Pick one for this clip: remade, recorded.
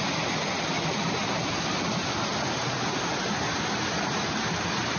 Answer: recorded